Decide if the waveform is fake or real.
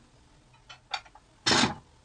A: real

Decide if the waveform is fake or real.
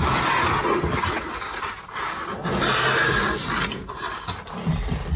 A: real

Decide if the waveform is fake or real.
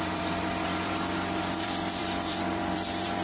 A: fake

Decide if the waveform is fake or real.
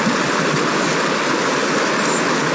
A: real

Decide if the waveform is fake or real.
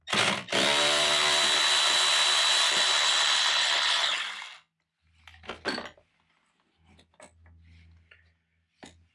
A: real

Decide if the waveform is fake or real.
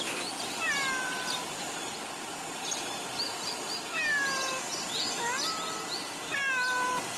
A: real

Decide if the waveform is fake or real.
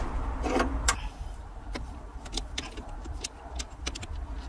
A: fake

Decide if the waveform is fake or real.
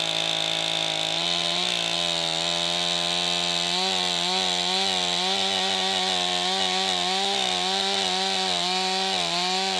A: real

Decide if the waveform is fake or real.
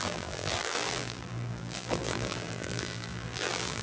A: fake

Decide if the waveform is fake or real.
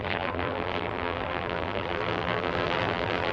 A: fake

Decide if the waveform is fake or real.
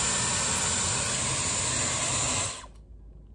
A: real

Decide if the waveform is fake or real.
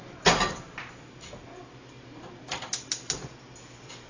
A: real